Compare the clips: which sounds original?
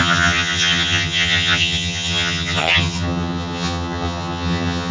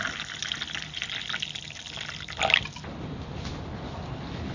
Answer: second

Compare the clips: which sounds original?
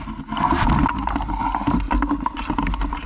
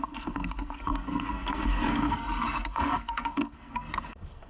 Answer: first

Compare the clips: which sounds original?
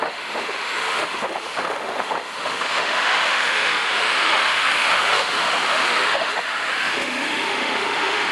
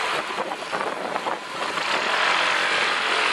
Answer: second